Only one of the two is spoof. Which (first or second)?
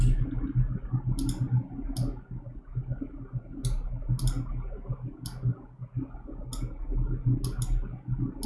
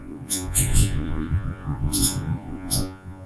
second